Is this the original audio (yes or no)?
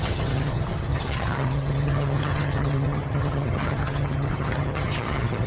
no